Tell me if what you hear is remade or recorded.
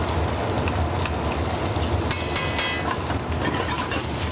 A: recorded